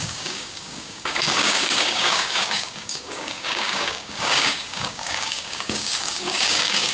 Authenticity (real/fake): fake